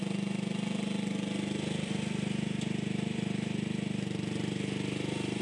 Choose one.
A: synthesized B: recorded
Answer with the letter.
B